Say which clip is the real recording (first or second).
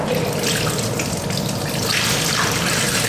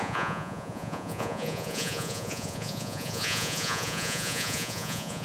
first